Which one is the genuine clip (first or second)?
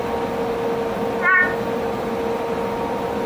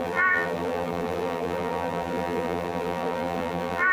first